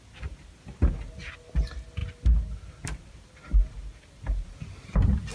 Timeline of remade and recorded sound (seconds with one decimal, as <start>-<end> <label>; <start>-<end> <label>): 0.0-5.3 recorded